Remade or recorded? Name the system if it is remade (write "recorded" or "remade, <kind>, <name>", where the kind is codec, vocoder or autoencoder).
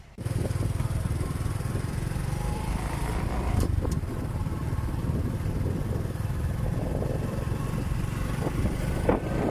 remade, vocoder, BigVGAN v2